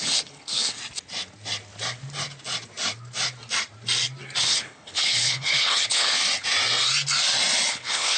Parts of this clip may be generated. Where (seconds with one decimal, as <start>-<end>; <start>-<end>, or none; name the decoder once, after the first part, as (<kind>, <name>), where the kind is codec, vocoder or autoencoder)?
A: 0.0-0.8 (codec, HILCodec); 4.4-6.2; 7.7-8.2